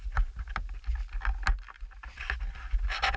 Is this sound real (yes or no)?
yes